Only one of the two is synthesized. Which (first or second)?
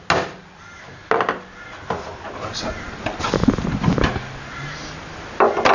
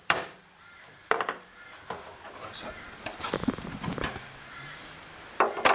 second